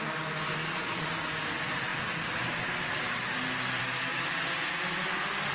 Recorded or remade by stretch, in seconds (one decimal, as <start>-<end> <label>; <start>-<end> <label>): 0.0-0.6 recorded; 0.6-1.1 remade; 1.1-5.5 recorded